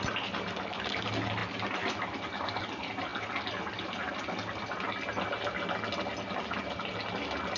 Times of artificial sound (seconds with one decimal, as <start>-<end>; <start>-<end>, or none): none

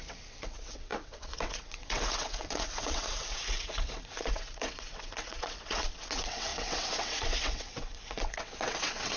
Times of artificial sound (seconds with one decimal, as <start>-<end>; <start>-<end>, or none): 0.0-9.2

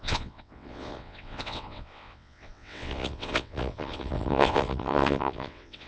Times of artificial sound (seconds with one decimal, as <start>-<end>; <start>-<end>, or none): 0.0-5.9

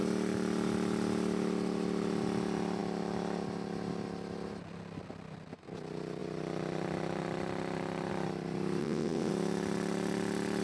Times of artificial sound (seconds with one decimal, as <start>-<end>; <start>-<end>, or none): 8.8-9.3